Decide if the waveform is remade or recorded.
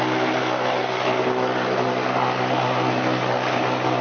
recorded